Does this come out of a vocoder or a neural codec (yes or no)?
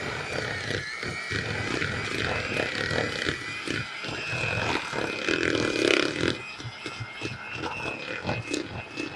no